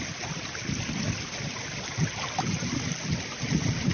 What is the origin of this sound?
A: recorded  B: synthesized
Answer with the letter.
A